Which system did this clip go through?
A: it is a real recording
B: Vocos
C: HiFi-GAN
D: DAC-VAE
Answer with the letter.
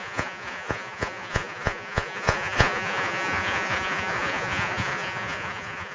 B